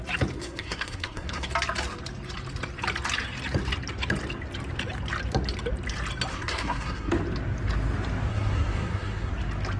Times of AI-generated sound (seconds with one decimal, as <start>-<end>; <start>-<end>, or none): 0.4-1.5; 6.3-7.1; 8.3-9.3

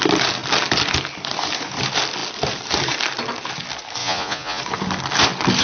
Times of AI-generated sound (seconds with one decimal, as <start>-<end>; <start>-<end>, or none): 4.0-4.6